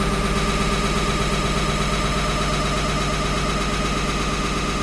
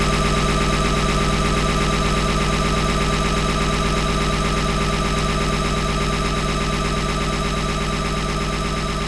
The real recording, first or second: second